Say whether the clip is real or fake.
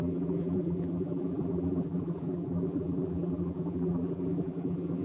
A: fake